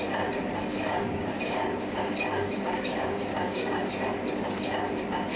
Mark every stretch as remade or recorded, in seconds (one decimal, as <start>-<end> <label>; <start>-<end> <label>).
0.0-0.7 recorded; 0.7-3.9 remade; 3.9-5.4 recorded